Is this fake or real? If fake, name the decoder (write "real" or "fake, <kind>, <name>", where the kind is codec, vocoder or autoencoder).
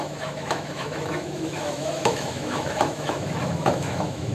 fake, autoencoder, DAC-VAE